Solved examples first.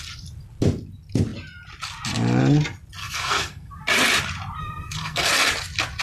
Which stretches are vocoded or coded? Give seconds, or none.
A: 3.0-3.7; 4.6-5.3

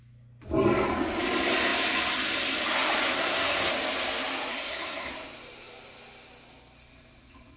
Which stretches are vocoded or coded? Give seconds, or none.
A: 3.1-3.7; 4.5-5.1

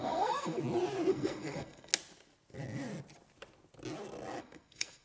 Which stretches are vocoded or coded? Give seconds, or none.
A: 0.0-0.6; 1.1-1.9; 4.4-5.0

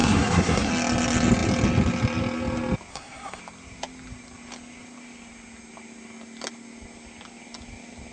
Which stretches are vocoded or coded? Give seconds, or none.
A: 0.0-0.7; 2.9-3.4

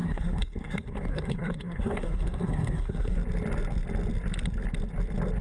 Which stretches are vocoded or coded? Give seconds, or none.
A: 0.0-3.2

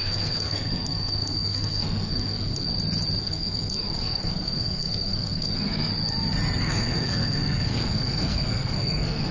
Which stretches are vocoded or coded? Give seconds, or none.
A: 0.0-2.7; 3.2-5.9; 6.6-9.3

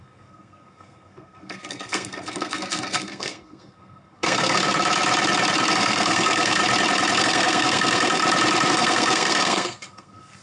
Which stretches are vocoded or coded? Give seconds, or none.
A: 0.0-4.6; 5.7-6.6; 7.2-8.2; 8.7-10.4